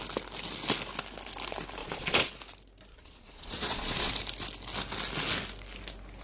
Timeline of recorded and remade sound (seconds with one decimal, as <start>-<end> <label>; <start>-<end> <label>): 0.0-1.8 recorded; 1.8-2.3 remade; 2.3-2.9 recorded; 2.9-4.1 remade; 4.1-6.2 recorded